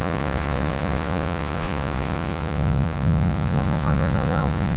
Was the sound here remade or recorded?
remade